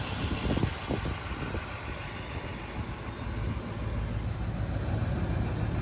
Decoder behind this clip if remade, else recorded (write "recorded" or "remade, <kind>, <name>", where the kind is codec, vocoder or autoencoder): recorded